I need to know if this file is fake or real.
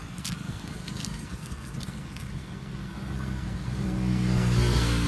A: fake